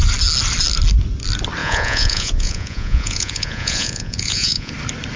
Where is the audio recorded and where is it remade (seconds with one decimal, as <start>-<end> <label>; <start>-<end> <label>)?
0.0-1.6 recorded; 1.6-4.7 remade; 4.7-5.2 recorded